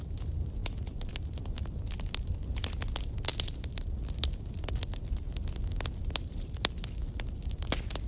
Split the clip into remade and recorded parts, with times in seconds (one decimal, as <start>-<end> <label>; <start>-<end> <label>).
0.0-8.1 recorded